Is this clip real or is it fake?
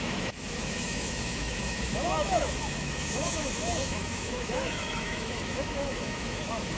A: fake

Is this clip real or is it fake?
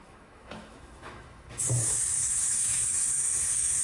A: fake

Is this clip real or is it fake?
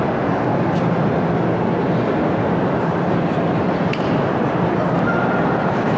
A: real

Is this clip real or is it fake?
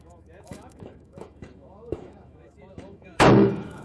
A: fake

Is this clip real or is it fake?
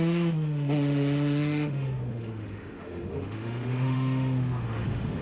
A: fake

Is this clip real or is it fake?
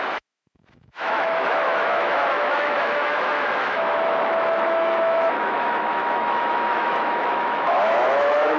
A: fake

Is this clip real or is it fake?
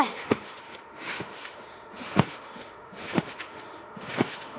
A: fake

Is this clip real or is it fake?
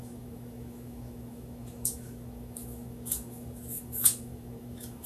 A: fake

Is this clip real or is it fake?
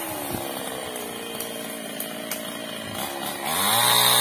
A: real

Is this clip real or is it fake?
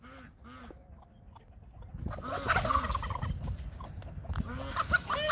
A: real